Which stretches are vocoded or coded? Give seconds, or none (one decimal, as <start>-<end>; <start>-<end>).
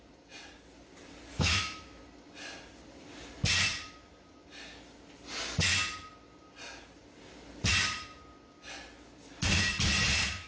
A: 1.3-2.0